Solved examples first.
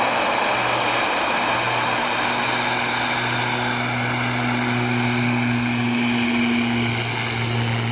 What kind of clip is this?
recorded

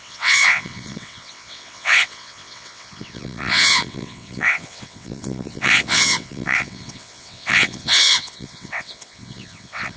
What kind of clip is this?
remade